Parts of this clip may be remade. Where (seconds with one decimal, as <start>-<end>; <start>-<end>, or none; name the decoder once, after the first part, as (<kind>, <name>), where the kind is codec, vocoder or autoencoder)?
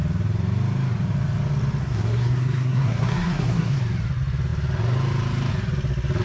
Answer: 1.8-3.8 (codec, SNAC)